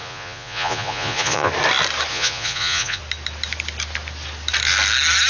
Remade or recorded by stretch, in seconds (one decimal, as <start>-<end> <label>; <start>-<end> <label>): 0.0-1.5 remade; 1.5-2.1 recorded; 2.1-3.0 remade; 3.0-5.3 recorded